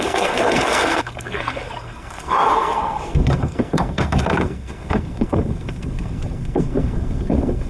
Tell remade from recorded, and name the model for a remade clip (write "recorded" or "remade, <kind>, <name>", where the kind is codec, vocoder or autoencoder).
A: remade, codec, SNAC